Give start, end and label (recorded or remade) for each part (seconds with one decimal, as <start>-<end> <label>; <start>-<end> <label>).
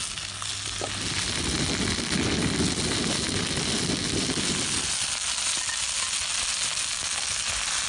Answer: 0.0-7.9 recorded